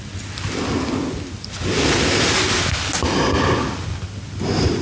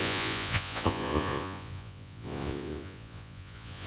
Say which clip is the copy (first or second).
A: second